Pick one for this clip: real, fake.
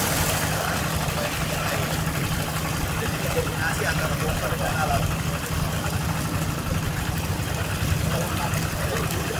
real